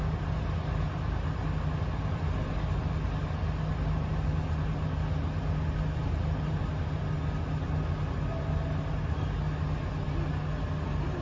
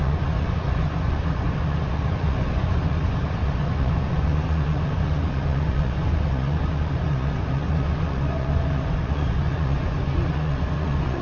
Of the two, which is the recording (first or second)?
first